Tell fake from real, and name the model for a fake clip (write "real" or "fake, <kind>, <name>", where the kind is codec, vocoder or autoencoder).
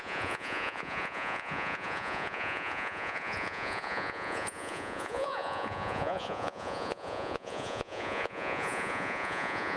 fake, vocoder, Vocos